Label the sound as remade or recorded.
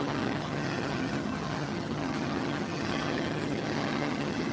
remade